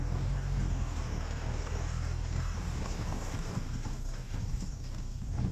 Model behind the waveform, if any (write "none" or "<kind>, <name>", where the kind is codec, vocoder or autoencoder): codec, DAC